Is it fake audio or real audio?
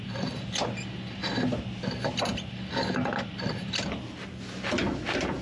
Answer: real